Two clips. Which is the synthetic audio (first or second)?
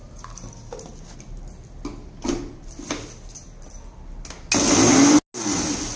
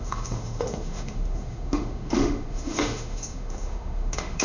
second